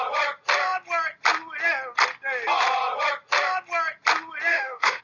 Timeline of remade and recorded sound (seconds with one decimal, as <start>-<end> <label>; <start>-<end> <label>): 0.0-4.5 recorded; 4.5-5.0 remade